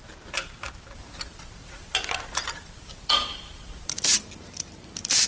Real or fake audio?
fake